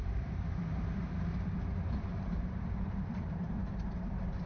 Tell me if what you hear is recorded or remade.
remade